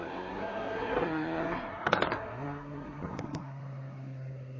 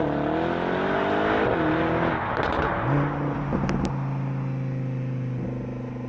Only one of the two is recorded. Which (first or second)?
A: second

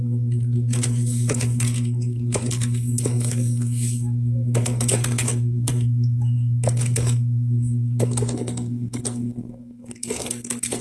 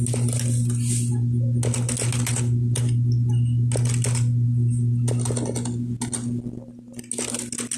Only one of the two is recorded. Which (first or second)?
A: second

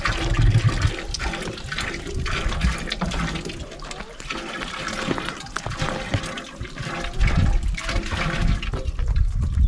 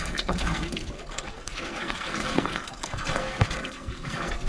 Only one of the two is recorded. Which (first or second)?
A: first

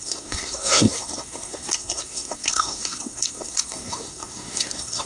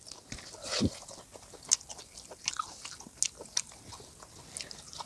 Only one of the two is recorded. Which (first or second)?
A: second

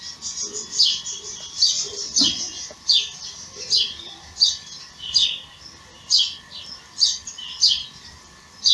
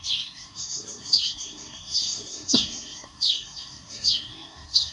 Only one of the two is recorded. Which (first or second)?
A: first